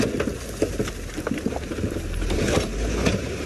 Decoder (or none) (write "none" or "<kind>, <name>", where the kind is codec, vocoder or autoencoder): none